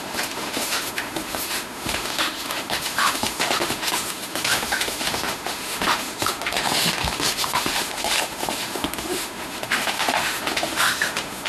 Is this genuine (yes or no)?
no